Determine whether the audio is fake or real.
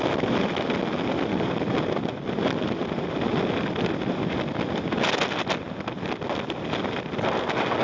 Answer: real